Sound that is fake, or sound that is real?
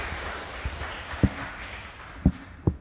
real